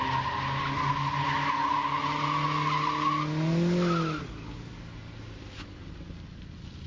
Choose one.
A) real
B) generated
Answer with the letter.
A